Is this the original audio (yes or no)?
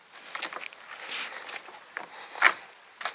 yes